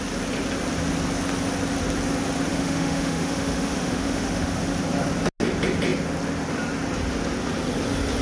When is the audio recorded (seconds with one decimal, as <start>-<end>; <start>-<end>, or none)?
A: 0.0-2.5; 4.6-8.2